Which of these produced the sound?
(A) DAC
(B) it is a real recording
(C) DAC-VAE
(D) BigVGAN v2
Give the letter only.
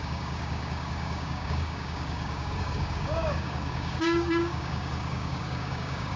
A